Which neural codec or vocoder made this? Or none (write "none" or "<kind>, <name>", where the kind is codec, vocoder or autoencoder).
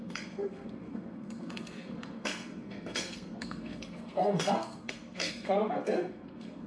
codec, SNAC